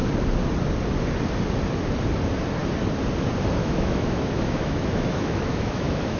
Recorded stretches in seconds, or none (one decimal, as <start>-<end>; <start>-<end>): 0.0-3.6